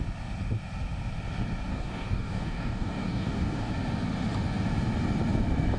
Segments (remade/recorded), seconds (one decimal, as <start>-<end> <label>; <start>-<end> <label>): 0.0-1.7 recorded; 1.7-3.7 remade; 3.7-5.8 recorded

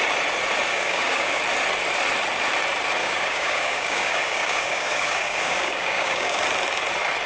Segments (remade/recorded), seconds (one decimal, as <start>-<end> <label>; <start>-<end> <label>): 0.0-0.7 recorded; 0.7-1.4 remade; 1.4-3.0 recorded; 3.0-6.4 remade; 6.4-7.3 recorded

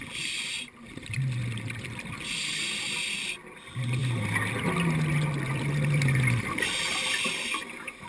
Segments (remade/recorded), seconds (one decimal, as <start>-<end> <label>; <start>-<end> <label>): 0.0-8.1 recorded

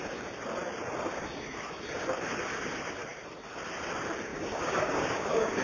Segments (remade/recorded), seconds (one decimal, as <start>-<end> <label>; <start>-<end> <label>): 0.0-4.3 recorded; 4.3-5.6 remade